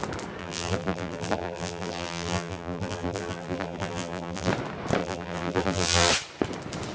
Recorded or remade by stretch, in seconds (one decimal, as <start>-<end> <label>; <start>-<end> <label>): 0.0-0.4 recorded; 0.4-4.5 remade; 4.5-5.0 recorded; 5.0-6.1 remade; 6.1-6.9 recorded